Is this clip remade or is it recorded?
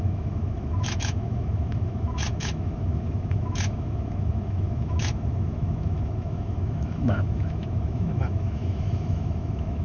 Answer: remade